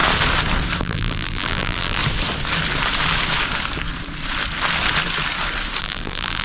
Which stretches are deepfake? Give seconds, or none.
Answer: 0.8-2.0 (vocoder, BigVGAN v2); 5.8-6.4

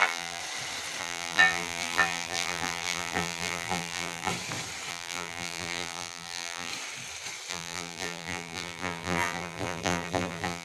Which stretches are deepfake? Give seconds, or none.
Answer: 0.0-0.4 (vocoder, BigVGAN v2); 1.0-4.3; 4.9-6.7; 7.5-10.6

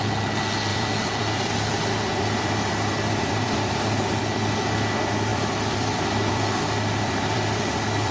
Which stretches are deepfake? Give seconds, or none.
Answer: 0.7-1.5 (vocoder, BigVGAN v2); 2.1-4.2; 5.3-8.1